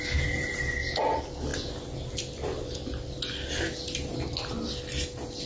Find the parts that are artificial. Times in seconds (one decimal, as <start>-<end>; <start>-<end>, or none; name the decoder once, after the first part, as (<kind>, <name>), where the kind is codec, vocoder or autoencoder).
none